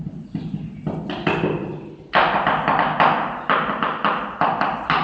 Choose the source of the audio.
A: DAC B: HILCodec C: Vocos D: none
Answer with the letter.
D